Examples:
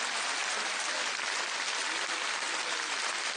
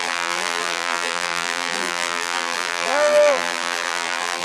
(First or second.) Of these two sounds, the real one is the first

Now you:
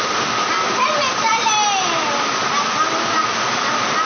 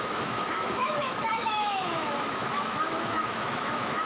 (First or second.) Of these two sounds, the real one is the first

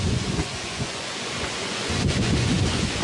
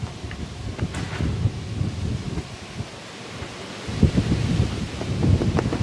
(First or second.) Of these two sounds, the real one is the second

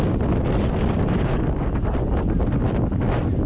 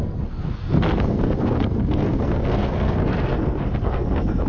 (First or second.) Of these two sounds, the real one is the first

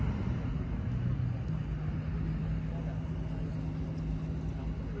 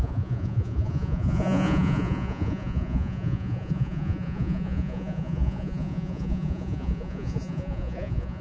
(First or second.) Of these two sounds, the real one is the first